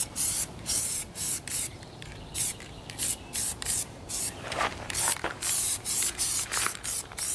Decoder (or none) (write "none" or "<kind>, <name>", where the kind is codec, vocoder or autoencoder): vocoder, BigVGAN v2